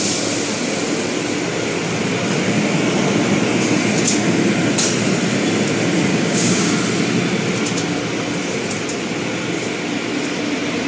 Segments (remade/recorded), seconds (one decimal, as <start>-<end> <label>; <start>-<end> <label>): 0.0-6.1 recorded; 6.1-6.7 remade; 6.7-10.9 recorded